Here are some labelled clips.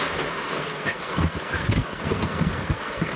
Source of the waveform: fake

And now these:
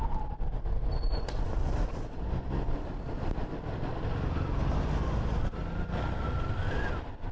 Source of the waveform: real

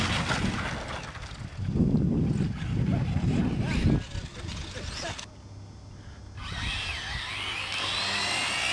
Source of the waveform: real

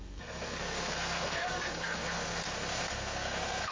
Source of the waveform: fake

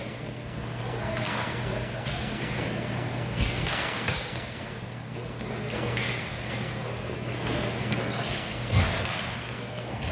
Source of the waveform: fake